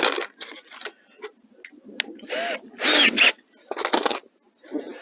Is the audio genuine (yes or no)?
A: yes